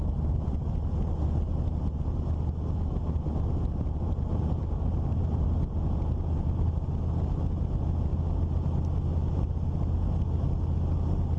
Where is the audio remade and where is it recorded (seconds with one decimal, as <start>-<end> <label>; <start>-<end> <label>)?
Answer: 0.0-11.4 recorded